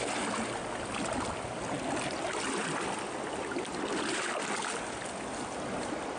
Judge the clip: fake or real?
real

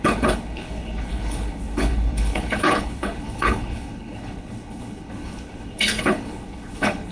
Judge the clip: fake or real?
fake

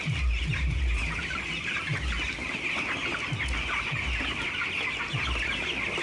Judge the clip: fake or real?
real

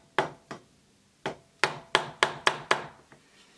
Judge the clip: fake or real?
real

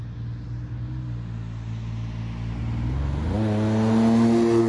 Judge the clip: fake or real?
real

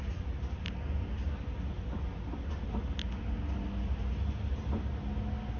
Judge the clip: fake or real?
real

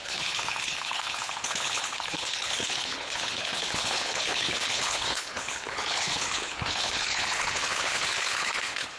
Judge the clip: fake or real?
fake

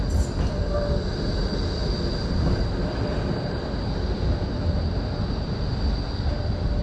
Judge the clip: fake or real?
real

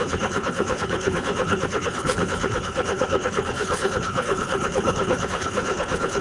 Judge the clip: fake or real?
fake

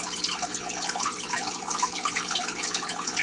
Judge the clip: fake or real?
fake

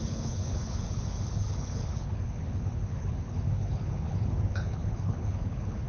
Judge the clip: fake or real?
fake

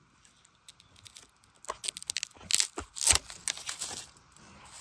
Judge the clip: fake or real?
real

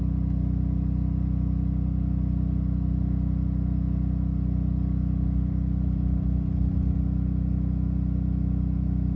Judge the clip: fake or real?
real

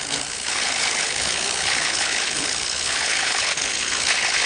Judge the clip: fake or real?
fake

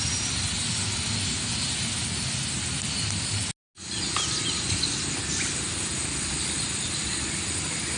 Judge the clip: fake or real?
real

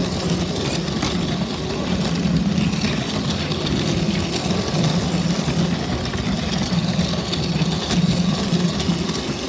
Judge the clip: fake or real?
real